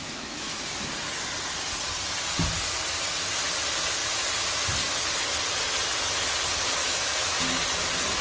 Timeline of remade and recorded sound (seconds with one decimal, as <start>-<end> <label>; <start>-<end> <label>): 0.0-0.8 remade; 0.8-6.8 recorded; 6.8-7.4 remade; 7.4-8.2 recorded